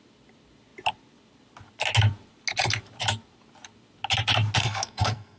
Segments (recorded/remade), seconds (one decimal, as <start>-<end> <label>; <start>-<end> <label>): 0.0-4.6 recorded; 4.6-5.4 remade